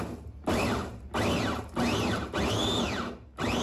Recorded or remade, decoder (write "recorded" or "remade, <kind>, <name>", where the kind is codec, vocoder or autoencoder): recorded